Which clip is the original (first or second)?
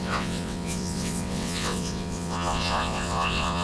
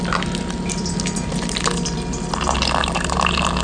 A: second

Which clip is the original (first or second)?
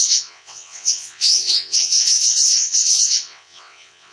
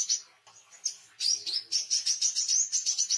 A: second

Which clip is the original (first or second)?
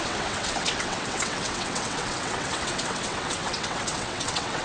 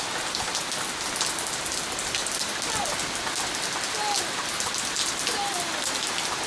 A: second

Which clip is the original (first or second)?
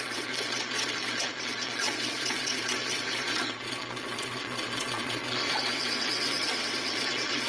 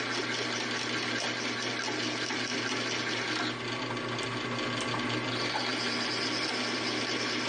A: second